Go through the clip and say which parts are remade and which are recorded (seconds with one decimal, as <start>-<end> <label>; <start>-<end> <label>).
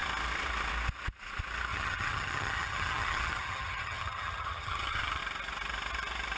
0.0-1.7 recorded; 1.7-5.2 remade; 5.2-6.4 recorded